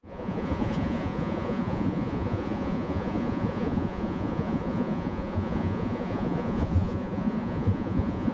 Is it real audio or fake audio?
fake